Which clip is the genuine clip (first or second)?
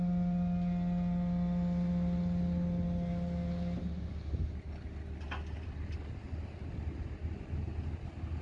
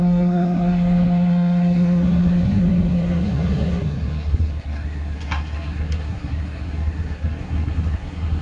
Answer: first